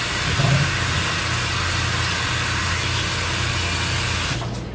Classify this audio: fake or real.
real